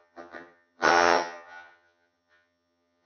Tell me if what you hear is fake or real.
fake